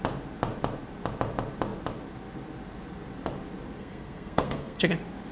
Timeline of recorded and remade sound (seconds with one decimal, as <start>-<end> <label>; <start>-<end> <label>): 0.0-3.8 recorded; 3.8-4.8 remade; 4.8-5.3 recorded